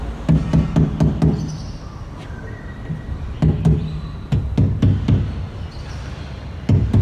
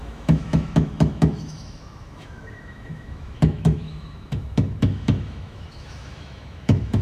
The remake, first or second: second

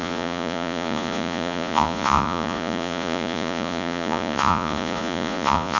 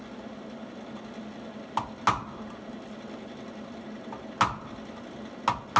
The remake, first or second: first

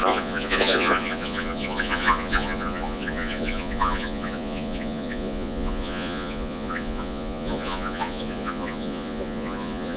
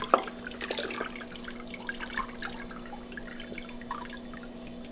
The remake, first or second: first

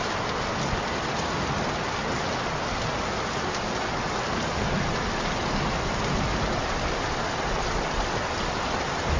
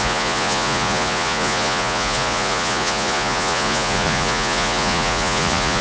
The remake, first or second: second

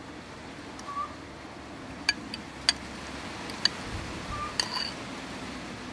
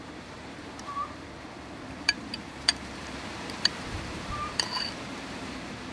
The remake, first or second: second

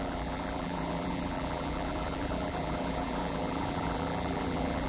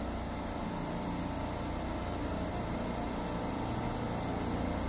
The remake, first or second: first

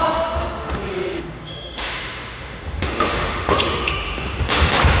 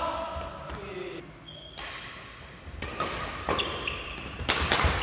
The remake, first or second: first